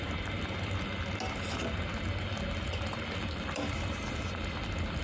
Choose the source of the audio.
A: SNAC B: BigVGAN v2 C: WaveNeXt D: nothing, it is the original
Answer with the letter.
D